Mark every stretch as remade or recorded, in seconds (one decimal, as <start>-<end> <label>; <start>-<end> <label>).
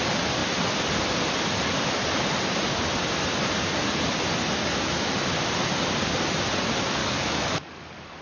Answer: 0.0-7.0 recorded; 7.0-8.2 remade